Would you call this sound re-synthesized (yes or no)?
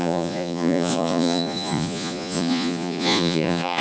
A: yes